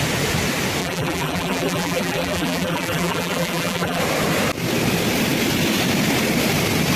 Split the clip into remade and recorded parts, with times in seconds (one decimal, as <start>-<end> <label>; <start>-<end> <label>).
0.0-0.8 recorded; 0.8-4.0 remade; 4.0-7.0 recorded